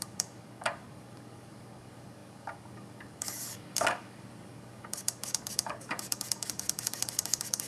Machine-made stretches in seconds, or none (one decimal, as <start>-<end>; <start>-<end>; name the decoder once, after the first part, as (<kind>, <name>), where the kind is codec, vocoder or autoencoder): 0.0-7.7 (codec, DAC)